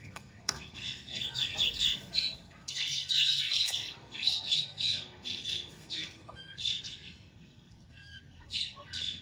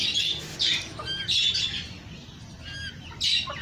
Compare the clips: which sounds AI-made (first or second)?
first